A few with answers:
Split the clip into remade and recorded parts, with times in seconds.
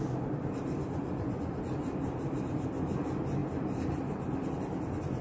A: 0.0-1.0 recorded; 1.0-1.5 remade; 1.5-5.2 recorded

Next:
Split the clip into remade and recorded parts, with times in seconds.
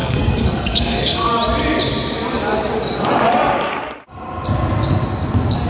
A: 0.0-1.3 remade; 1.3-5.7 recorded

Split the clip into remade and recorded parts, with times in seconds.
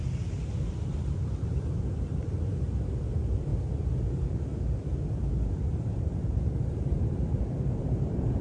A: 0.0-3.5 remade; 3.5-4.0 recorded; 4.0-4.5 remade; 4.5-5.5 recorded; 5.5-8.4 remade